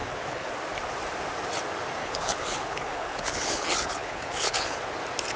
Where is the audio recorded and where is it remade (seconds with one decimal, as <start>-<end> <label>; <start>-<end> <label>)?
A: 0.0-0.5 remade; 0.5-2.0 recorded; 2.0-4.8 remade; 4.8-5.4 recorded